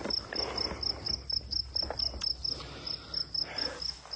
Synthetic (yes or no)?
no